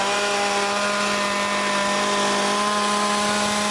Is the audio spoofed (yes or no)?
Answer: no